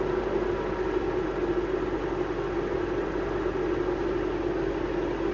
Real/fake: real